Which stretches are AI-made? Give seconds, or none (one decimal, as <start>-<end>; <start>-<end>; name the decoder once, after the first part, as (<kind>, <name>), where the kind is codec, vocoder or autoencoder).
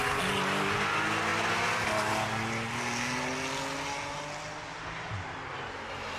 none